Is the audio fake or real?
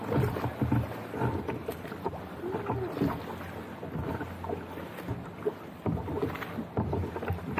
real